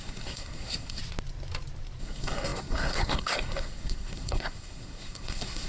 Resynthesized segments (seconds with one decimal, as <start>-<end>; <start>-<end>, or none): 0.0-1.0; 2.0-5.7